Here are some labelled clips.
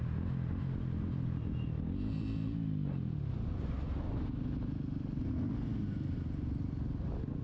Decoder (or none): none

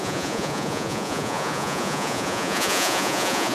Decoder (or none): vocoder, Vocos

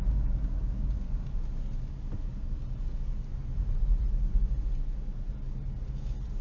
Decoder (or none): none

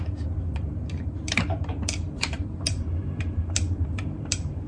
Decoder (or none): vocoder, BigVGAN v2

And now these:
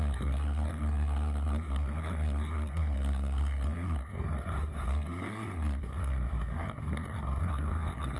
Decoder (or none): codec, SNAC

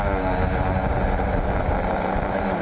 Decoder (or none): none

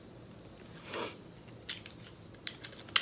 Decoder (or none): none